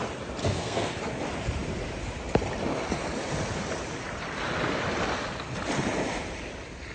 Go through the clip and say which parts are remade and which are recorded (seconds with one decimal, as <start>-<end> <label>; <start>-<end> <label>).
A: 0.0-0.4 recorded; 0.4-1.0 remade; 1.0-6.9 recorded